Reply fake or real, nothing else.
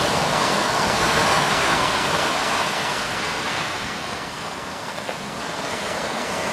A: fake